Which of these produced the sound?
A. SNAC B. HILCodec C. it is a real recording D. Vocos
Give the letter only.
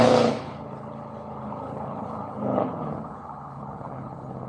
B